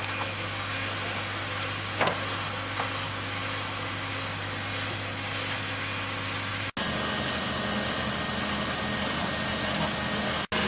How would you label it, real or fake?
real